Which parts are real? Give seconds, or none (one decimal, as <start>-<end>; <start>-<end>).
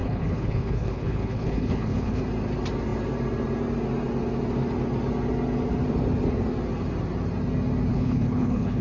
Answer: 2.2-7.9